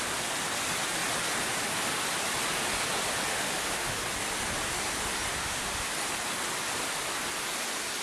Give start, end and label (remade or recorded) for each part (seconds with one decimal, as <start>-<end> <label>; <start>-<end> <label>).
0.0-3.3 recorded; 3.3-4.0 remade; 4.0-5.3 recorded; 5.3-5.9 remade; 5.9-8.0 recorded